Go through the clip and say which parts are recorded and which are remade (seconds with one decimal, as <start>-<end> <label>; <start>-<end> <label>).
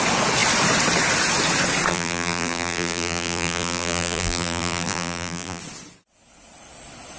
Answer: 0.0-1.9 recorded; 1.9-5.6 remade; 5.6-7.2 recorded